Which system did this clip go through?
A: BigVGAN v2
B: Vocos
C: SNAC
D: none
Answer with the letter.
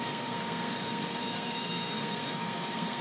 C